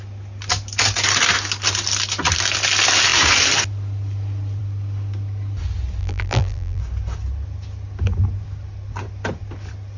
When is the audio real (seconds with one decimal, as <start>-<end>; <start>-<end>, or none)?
0.0-6.0; 6.8-10.0